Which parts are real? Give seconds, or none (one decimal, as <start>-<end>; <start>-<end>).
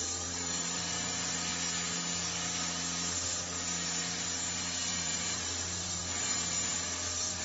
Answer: 1.5-4.6